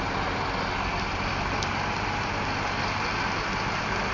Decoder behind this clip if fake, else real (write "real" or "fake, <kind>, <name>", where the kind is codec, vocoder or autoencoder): real